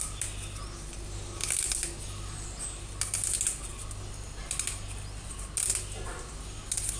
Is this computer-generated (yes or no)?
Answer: no